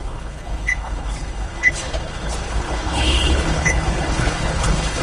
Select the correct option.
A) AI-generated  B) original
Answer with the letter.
A